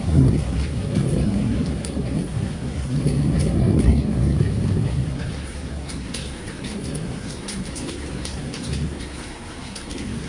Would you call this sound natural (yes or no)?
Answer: no